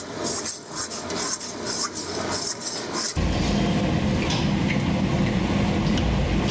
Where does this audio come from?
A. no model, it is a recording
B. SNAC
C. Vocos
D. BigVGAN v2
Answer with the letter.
A